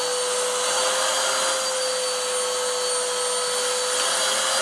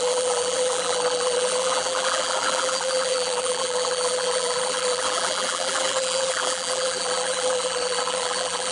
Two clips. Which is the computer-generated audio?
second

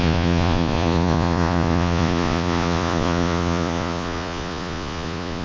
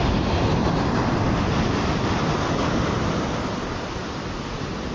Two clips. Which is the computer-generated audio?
first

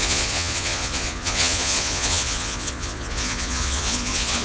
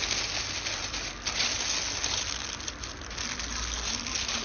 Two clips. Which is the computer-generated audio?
first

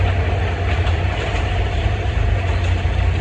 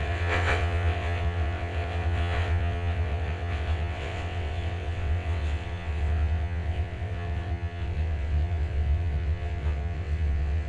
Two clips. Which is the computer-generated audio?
second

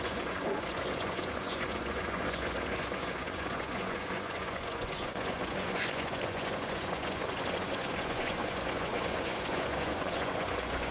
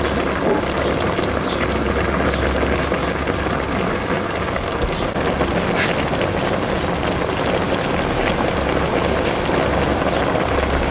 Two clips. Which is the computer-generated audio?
first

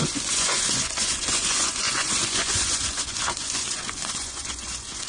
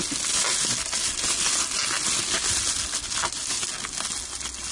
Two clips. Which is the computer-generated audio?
first